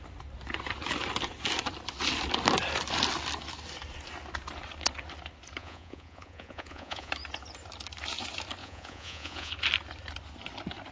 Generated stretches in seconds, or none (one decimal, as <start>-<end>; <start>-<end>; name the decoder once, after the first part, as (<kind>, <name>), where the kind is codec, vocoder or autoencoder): 5.6-7.1 (vocoder, Vocos); 8.6-9.5